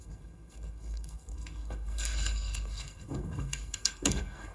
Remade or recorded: remade